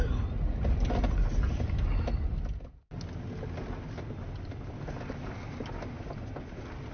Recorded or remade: recorded